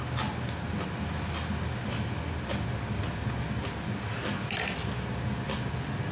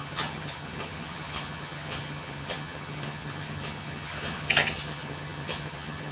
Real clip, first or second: first